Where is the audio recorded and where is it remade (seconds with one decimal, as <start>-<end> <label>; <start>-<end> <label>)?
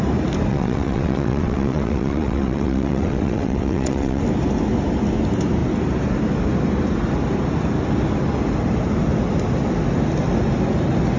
0.0-0.5 recorded; 0.5-4.2 remade; 4.2-11.2 recorded